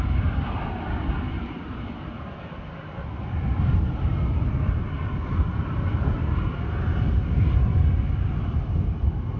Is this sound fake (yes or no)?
no